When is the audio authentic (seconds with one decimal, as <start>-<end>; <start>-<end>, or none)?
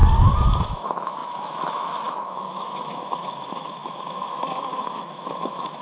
0.0-0.6